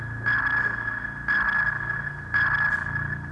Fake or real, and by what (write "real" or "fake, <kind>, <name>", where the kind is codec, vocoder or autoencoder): real